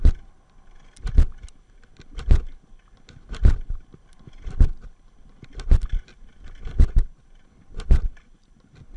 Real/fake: real